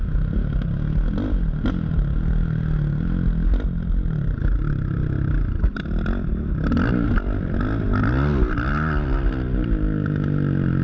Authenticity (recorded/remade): recorded